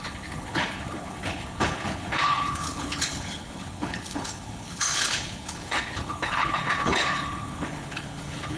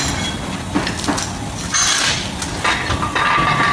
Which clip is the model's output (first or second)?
first